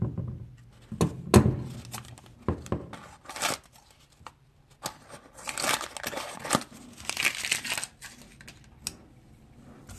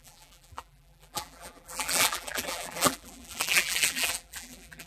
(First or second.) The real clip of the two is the first